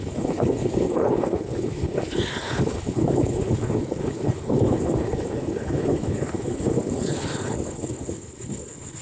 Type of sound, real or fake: fake